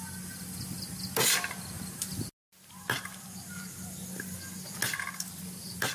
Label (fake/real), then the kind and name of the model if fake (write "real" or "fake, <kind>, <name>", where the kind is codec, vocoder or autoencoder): real